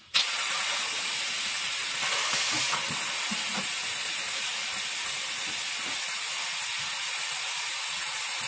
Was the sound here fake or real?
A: real